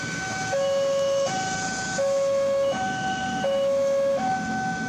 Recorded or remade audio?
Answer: remade